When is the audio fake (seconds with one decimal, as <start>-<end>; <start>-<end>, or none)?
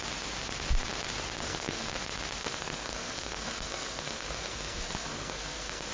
1.4-1.9; 2.4-5.9